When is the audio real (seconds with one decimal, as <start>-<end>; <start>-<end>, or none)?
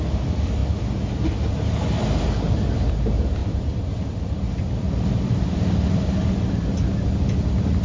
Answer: 0.0-3.4; 6.3-7.8